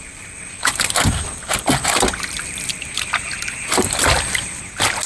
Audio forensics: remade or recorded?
recorded